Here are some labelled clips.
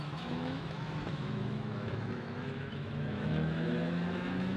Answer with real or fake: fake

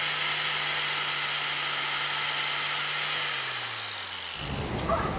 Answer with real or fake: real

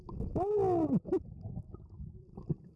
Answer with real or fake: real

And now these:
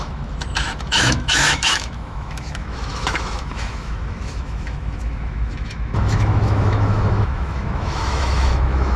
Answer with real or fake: fake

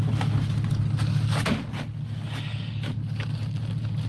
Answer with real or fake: real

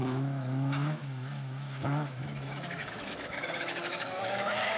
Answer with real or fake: fake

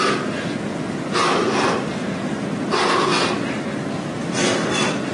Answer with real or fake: real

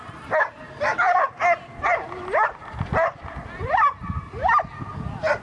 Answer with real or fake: real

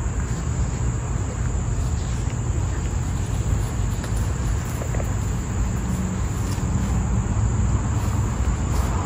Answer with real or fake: real